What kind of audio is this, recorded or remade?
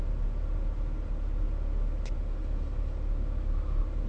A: recorded